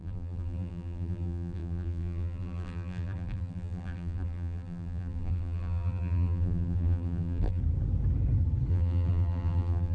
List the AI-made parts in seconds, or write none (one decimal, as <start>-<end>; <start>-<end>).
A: 0.0-7.6; 8.7-9.9